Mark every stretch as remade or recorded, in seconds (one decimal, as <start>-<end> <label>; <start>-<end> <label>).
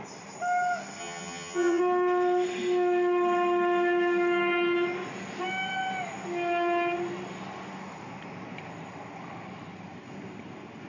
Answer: 0.0-1.0 recorded; 1.0-1.8 remade; 1.8-10.9 recorded